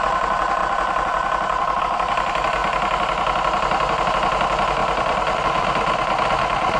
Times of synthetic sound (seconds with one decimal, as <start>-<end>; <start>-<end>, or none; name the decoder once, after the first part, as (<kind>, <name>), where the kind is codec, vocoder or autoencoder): none